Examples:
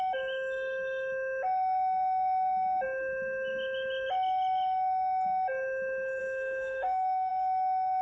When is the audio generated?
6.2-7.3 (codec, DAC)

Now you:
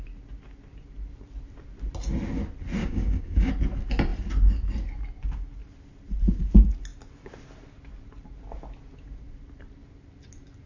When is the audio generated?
2.8-3.5 (codec, DAC)

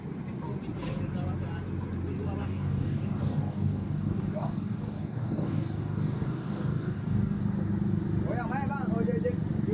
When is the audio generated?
2.4-7.4 (codec, DAC)

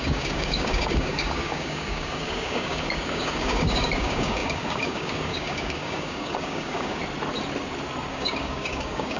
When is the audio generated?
0.0-7.0 (codec, DAC); 8.1-9.2

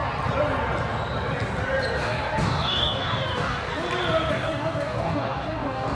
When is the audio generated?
2.0-3.7 (codec, DAC); 4.3-5.9

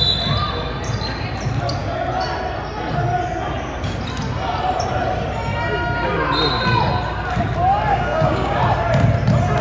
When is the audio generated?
7.9-8.6 (codec, DAC)

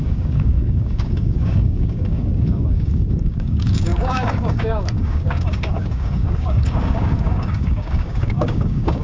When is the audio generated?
0.0-9.0 (codec, DAC)